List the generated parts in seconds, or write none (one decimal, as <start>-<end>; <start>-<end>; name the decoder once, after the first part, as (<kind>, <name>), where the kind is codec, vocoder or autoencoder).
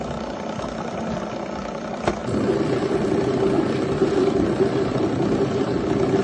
none